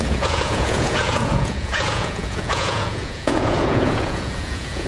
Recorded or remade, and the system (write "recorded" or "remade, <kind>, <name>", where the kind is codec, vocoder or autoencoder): remade, vocoder, Vocos